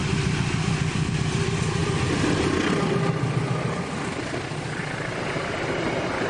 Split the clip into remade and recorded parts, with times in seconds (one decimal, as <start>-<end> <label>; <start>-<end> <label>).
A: 0.0-1.2 remade; 1.2-1.8 recorded; 1.8-2.7 remade; 2.7-4.1 recorded; 4.1-5.5 remade; 5.5-6.3 recorded